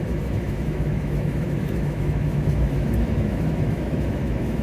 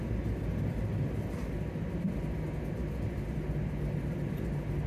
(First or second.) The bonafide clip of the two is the second